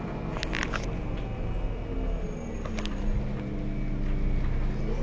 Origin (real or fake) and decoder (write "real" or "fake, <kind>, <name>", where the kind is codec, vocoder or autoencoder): real